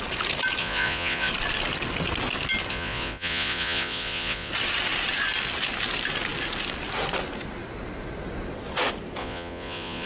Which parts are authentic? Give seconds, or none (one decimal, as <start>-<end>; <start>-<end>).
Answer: 0.0-0.6; 1.3-2.7; 4.5-9.2